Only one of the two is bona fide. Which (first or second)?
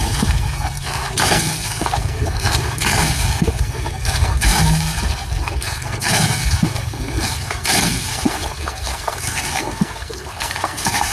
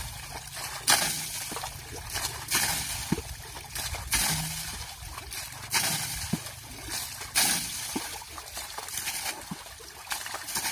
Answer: second